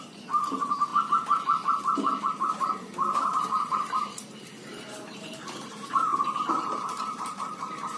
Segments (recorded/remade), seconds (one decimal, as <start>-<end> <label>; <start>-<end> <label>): 0.0-0.9 remade; 0.9-2.3 recorded; 2.3-8.0 remade